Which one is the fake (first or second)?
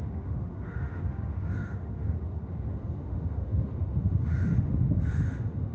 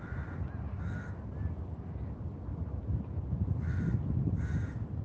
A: first